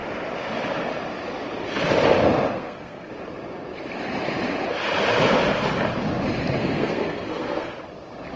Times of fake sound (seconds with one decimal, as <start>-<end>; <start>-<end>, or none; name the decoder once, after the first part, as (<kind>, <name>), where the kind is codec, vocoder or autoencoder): 2.5-3.1 (codec, SNAC); 6.6-7.7